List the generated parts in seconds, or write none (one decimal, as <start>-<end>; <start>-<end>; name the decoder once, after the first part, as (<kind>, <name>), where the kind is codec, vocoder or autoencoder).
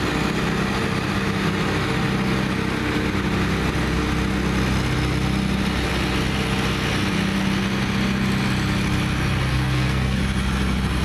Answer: 9.5-10.2 (codec, SNAC)